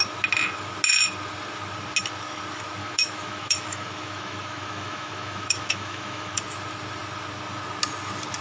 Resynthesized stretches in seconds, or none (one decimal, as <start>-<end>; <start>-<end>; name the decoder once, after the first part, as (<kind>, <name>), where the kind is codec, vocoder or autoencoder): 2.8-6.4 (autoencoder, DAC-VAE)

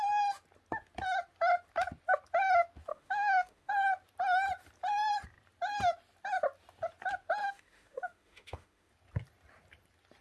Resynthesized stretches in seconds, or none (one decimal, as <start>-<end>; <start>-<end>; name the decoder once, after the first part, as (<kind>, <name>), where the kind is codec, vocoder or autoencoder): 2.9-3.7 (autoencoder, DAC-VAE); 7.4-8.9